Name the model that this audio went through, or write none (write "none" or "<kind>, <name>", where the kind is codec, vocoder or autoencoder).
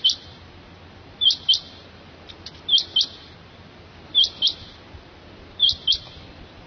none